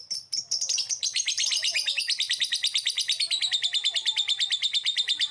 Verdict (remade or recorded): remade